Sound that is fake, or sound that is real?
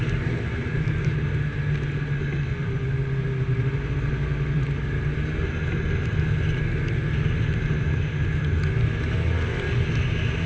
real